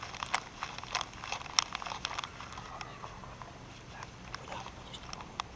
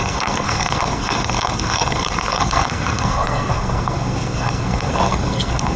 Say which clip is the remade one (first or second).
second